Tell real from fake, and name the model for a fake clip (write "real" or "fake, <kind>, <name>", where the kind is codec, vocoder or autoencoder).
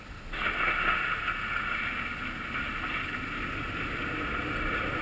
real